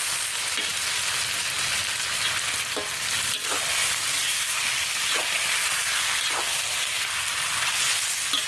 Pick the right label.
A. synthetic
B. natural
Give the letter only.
B